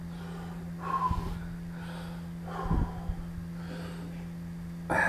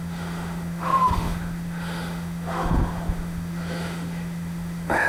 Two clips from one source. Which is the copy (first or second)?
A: second